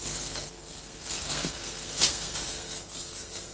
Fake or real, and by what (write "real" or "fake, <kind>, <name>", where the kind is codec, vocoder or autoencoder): fake, codec, SNAC